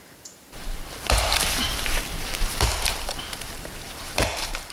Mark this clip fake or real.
fake